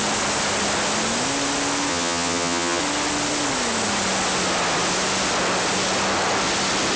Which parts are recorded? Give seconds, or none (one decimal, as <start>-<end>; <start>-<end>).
0.0-1.9; 2.8-7.0